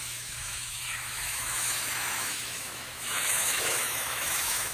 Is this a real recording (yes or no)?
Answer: no